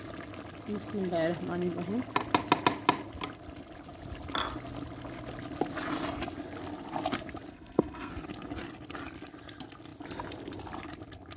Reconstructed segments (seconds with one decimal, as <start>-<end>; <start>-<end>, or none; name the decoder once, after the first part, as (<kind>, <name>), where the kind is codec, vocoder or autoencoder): 7.5-8.1 (codec, SNAC)